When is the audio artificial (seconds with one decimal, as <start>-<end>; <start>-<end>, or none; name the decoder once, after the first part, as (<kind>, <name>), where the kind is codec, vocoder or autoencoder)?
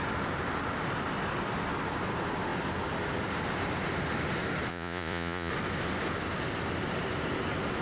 4.7-5.5 (vocoder, Vocos)